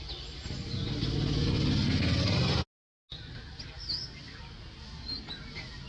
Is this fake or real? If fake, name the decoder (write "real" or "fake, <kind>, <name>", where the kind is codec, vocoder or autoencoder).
real